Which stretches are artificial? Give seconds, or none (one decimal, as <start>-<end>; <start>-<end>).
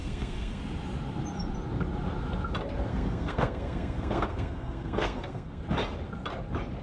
0.0-0.6; 2.9-5.6